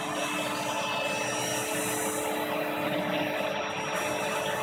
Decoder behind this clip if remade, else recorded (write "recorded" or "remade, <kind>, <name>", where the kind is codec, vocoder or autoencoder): recorded